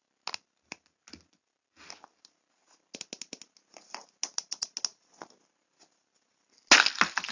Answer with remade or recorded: recorded